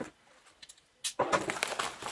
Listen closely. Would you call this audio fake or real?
real